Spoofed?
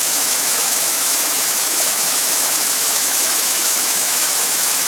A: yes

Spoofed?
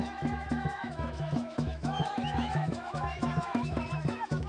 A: yes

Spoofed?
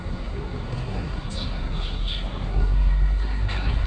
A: yes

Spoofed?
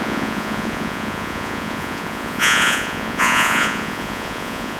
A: yes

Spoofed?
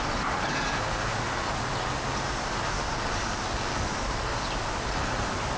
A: no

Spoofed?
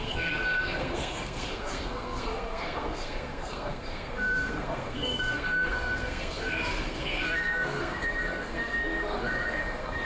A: yes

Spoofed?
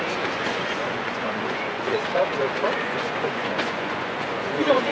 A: yes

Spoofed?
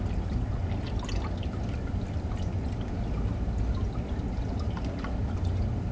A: no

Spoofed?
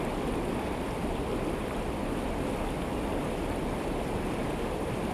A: no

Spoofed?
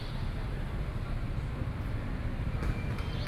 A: no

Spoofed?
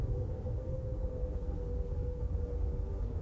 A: yes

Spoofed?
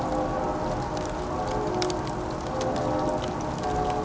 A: no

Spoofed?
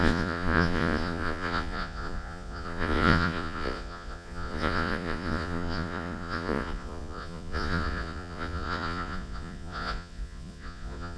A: yes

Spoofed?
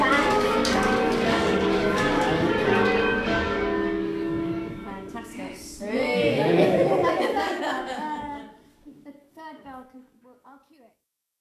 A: yes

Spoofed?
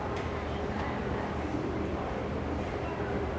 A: no